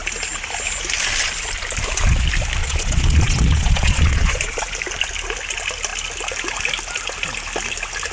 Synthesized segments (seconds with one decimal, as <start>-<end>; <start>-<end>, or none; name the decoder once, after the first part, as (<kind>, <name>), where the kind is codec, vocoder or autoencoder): 2.6-4.6 (vocoder, Vocos)